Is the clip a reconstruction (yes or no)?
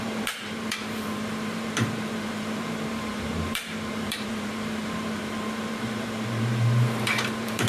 yes